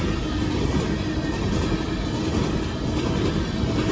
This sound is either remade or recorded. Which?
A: recorded